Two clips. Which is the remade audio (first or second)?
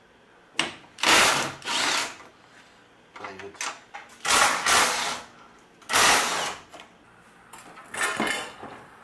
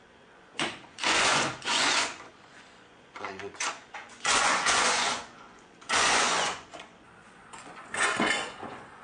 second